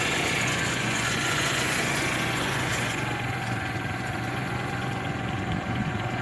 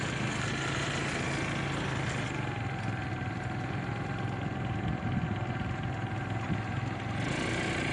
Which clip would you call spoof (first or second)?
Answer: first